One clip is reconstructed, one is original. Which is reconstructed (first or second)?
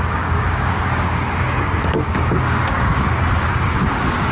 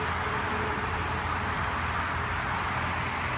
first